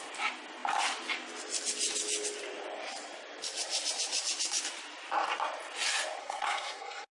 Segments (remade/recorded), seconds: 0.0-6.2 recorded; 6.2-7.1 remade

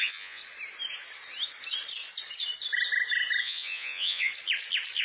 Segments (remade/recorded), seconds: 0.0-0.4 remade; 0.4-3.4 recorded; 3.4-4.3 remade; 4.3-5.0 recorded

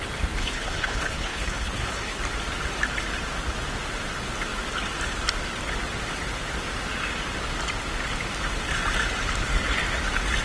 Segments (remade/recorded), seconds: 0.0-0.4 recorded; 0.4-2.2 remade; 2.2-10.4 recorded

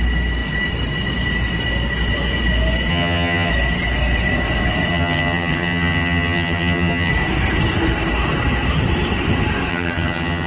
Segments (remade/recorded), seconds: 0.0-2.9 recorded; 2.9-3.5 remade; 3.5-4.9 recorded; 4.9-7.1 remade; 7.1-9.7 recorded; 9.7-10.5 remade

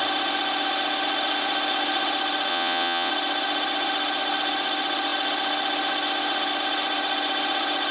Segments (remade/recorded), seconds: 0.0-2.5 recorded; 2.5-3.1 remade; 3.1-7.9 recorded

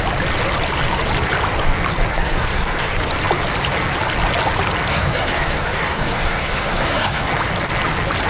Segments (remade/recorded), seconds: 0.0-2.1 recorded; 2.1-3.0 remade; 3.0-4.9 recorded; 4.9-7.3 remade; 7.3-8.3 recorded

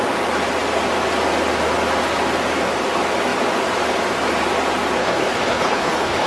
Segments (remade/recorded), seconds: 0.0-5.0 recorded; 5.0-6.3 remade